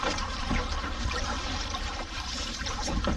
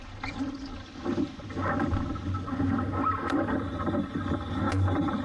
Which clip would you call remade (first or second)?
first